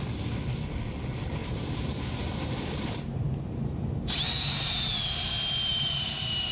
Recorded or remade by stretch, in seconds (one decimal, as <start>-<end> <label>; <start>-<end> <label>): 0.0-1.4 recorded; 1.4-5.3 remade; 5.3-5.7 recorded; 5.7-6.5 remade